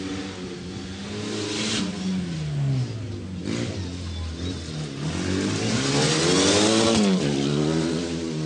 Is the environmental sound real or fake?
real